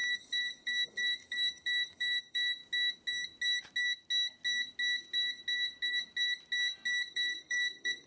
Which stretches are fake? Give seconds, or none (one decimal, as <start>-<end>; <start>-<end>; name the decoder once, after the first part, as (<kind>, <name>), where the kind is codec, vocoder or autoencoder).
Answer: 0.0-2.6 (codec, DAC); 7.1-8.1